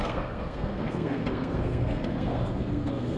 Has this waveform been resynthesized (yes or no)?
yes